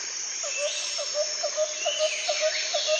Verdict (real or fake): real